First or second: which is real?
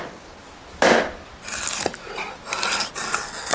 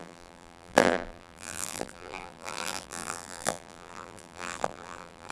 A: first